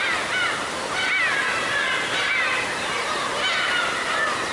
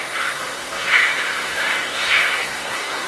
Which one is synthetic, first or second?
second